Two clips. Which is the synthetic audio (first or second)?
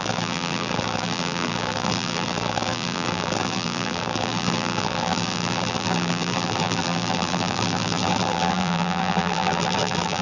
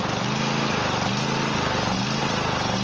first